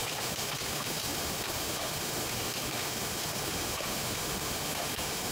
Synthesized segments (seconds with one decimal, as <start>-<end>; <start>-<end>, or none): 0.0-5.3